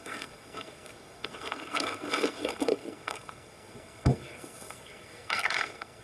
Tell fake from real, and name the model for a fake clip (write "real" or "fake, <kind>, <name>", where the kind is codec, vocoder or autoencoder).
fake, codec, SNAC